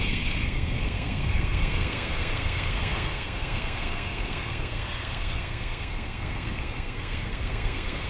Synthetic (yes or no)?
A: yes